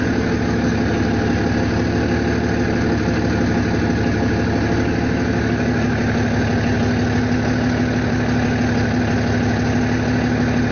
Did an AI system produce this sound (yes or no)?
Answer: no